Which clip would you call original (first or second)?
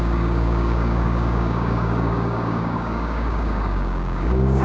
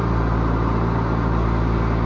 second